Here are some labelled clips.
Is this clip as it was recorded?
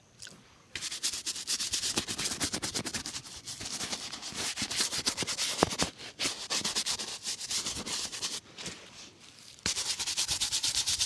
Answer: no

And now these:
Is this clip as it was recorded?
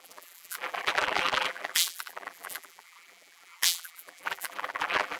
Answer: no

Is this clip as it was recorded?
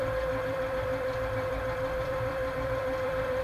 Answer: no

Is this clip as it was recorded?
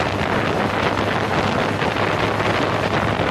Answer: yes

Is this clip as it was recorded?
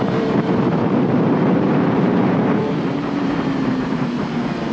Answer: no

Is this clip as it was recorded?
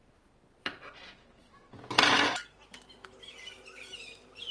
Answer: yes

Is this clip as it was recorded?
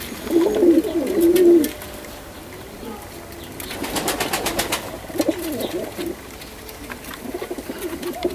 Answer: yes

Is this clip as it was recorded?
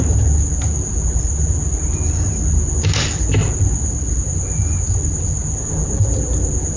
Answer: yes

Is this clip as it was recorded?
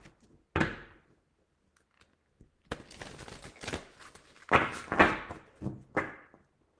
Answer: yes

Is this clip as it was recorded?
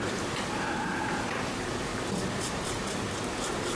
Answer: no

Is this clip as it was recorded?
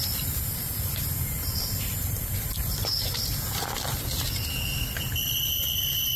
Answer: no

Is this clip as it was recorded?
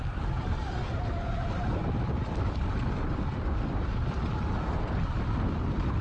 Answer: yes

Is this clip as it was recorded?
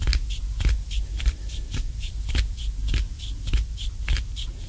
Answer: yes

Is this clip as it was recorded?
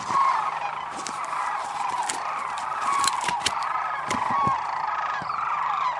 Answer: yes